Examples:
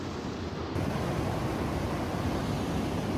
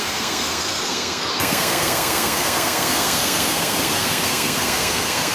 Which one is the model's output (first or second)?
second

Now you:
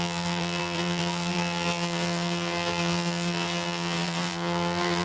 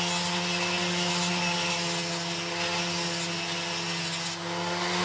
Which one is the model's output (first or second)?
first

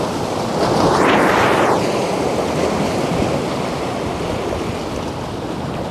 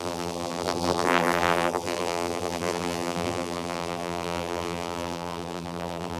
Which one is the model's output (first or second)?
second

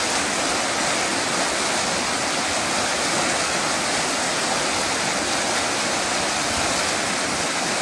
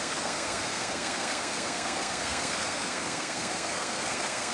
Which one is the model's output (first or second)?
second